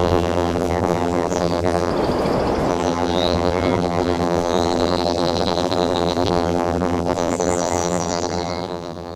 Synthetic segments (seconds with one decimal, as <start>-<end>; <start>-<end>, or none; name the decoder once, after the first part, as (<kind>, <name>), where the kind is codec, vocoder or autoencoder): 0.0-1.9 (vocoder, BigVGAN v2); 2.7-9.2